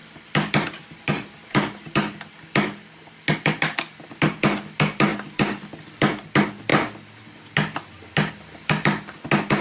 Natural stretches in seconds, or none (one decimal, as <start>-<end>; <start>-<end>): 0.0-9.6